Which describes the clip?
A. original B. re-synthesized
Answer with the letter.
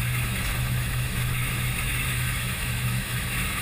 B